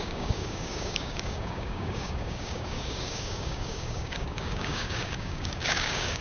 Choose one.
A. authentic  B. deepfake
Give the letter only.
B